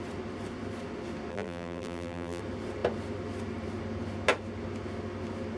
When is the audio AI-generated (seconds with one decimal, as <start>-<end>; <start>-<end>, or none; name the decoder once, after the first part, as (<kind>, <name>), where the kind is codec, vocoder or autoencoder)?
1.3-2.4 (vocoder, BigVGAN v2)